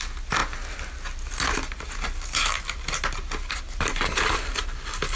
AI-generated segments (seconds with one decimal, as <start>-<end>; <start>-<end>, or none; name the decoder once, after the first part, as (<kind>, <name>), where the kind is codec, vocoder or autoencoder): none